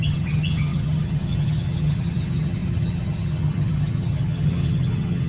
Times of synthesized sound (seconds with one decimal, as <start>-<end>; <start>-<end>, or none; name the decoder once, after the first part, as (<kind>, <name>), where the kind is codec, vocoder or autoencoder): 0.0-5.3 (vocoder, HiFi-GAN)